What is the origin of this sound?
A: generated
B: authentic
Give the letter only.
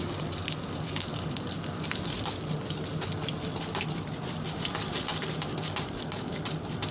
B